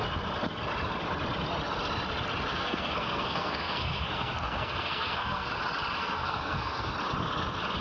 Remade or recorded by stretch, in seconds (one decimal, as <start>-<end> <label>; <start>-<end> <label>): 0.0-2.5 recorded; 2.5-5.5 remade; 5.5-6.0 recorded; 6.0-6.9 remade; 6.9-7.8 recorded